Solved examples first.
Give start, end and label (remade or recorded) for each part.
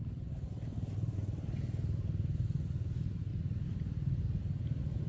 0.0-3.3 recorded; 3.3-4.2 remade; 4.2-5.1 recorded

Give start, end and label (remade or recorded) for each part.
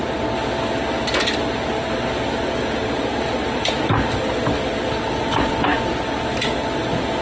0.0-7.2 recorded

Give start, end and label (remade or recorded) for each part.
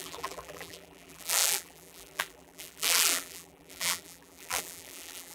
0.0-5.3 remade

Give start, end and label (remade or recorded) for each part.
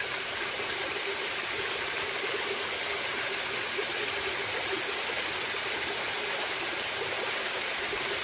0.0-3.1 remade; 3.1-7.5 recorded; 7.5-8.2 remade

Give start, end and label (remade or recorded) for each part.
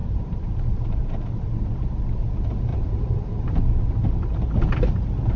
0.0-1.4 remade; 1.4-2.7 recorded; 2.7-3.6 remade; 3.6-5.4 recorded